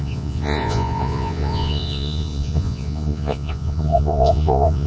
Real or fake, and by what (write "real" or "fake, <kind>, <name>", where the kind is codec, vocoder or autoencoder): fake, vocoder, Vocos